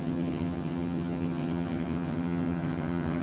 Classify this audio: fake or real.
fake